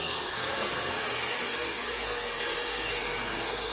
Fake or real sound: fake